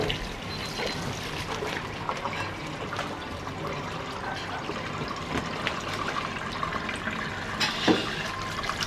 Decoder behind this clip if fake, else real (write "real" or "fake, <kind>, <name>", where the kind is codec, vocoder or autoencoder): real